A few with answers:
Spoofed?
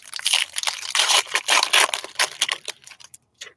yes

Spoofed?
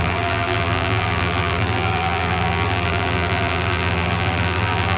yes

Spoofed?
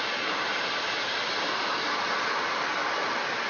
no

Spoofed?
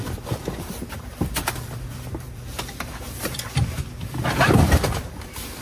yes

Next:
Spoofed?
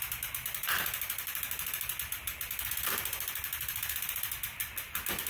no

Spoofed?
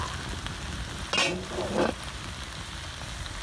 no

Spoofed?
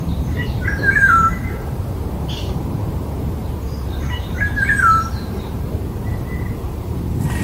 yes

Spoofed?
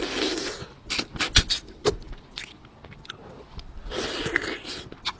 no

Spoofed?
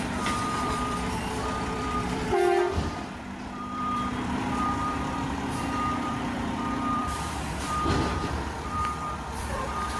yes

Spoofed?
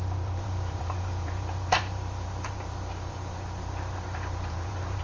yes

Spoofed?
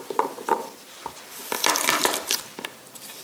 yes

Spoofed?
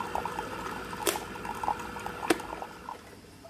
no